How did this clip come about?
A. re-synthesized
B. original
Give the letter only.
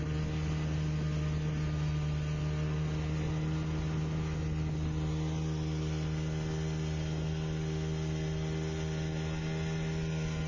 B